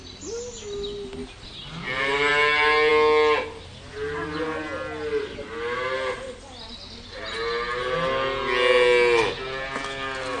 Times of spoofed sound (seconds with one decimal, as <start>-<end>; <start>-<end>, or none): none